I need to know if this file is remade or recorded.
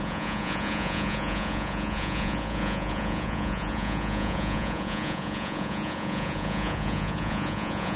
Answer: remade